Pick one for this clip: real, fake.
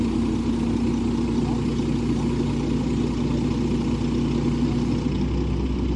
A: real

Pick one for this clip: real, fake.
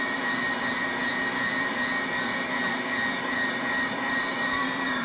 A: fake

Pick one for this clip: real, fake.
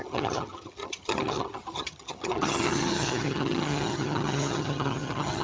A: fake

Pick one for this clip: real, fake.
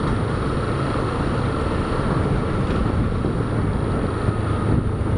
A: real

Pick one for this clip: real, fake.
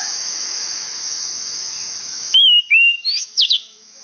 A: fake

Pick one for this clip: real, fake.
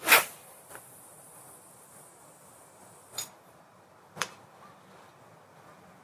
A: fake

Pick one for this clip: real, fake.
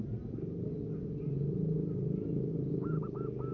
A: real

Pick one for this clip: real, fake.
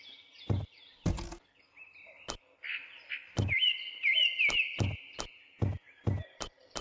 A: real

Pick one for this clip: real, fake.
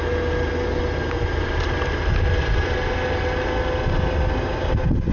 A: real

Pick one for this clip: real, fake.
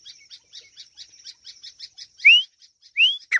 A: real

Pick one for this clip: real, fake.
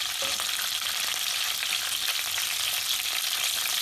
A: real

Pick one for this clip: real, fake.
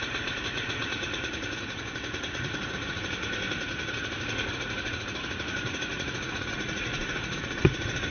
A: fake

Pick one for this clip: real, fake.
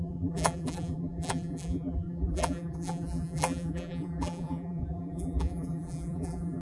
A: fake